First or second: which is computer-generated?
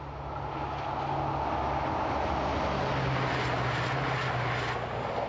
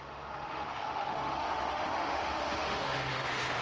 second